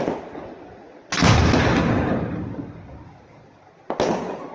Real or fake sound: real